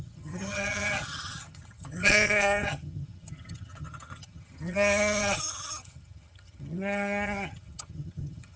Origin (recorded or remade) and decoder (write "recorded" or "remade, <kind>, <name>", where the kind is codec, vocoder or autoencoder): remade, vocoder, HiFi-GAN